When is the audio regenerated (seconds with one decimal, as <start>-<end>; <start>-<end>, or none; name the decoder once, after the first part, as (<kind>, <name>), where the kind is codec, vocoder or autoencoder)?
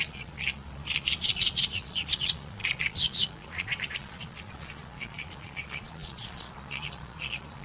0.0-7.6 (vocoder, Vocos)